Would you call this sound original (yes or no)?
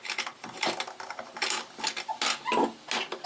yes